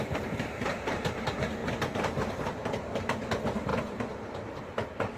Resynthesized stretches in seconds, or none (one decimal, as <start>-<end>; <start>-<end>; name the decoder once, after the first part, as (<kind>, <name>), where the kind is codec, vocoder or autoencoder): 0.0-3.7 (vocoder, BigVGAN v2); 4.6-5.2